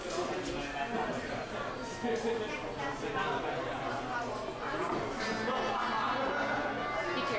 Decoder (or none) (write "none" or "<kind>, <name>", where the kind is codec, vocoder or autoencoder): none